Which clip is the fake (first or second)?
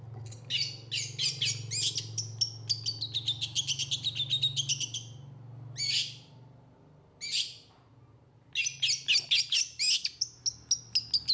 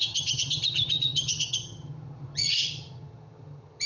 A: second